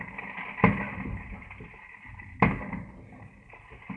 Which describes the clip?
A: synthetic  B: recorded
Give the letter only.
B